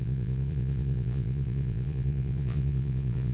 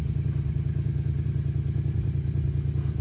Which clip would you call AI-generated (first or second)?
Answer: first